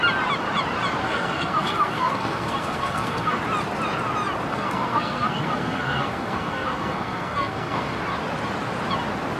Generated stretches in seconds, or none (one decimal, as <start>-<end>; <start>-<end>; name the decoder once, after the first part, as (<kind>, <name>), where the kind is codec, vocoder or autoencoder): 1.0-3.4 (codec, SNAC); 4.5-8.0